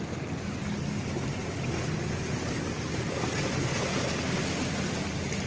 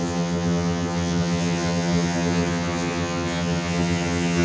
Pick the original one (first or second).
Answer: first